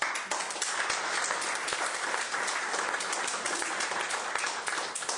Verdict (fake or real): real